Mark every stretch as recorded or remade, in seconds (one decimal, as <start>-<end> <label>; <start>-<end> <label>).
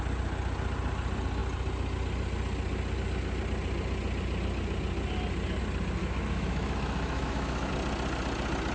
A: 0.0-6.0 recorded; 6.0-7.7 remade; 7.7-8.7 recorded